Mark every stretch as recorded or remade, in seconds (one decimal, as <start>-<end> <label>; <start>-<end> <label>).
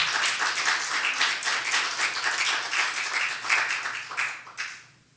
0.0-5.2 recorded